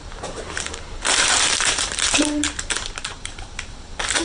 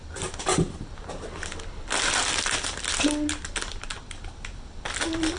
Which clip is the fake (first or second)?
first